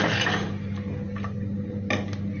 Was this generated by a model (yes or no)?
no